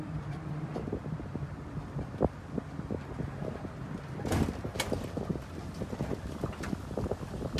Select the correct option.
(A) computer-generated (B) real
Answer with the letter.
B